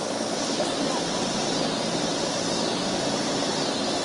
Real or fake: real